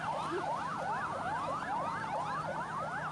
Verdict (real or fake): real